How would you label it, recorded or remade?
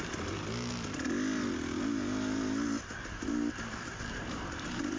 recorded